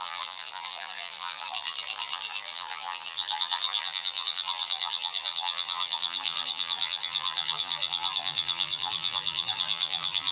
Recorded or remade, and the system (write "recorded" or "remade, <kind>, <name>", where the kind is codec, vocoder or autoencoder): remade, vocoder, BigVGAN v2